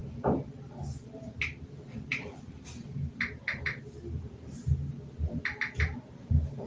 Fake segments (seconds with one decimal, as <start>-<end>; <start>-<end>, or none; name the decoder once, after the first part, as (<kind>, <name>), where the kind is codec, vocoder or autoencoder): none